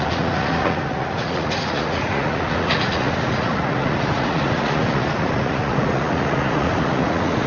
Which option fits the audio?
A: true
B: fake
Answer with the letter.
B